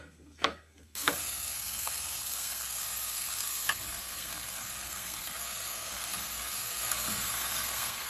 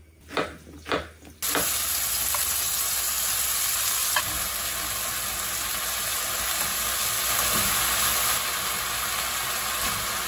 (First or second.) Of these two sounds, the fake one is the first